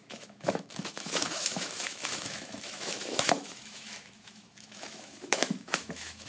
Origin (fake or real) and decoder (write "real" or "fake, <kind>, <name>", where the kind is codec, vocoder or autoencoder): fake, autoencoder, DAC-VAE